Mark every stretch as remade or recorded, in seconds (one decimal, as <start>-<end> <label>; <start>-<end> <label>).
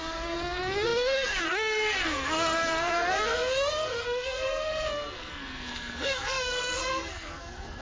0.0-7.8 remade